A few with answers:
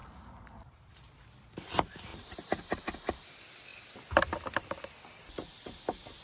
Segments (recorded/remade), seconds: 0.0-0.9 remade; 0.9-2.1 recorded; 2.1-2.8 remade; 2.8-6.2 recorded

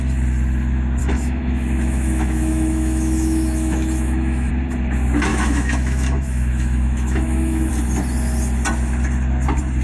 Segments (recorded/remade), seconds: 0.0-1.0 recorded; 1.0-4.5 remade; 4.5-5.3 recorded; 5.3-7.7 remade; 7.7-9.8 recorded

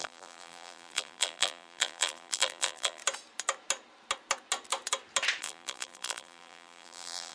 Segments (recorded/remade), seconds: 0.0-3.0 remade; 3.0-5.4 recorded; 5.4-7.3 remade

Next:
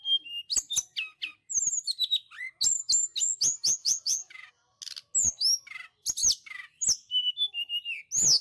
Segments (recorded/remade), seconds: 0.0-3.8 recorded; 3.8-4.5 remade; 4.5-8.4 recorded

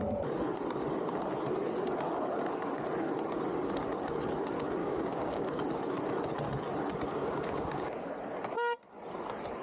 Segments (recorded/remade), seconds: 0.0-4.8 recorded; 4.8-5.5 remade; 5.5-7.2 recorded; 7.2-8.1 remade; 8.1-9.6 recorded

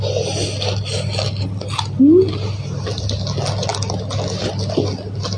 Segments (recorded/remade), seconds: 0.0-5.4 recorded

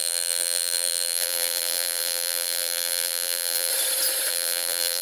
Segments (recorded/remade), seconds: 0.0-3.7 remade; 3.7-4.3 recorded; 4.3-5.0 remade